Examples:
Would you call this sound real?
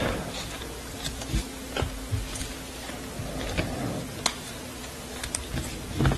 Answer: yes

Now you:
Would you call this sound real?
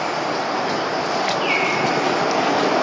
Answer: yes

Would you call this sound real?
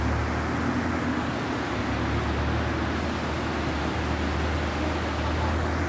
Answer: yes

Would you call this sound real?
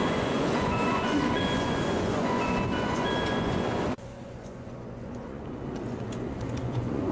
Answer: no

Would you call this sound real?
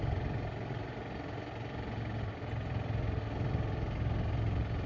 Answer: yes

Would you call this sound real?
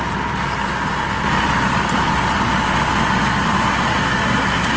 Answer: yes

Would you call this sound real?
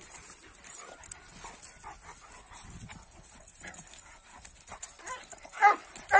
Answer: yes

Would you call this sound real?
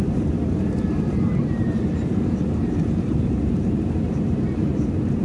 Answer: no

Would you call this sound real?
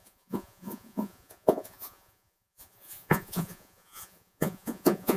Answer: no